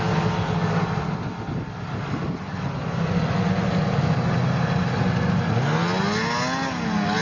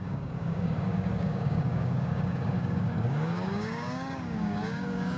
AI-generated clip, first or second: second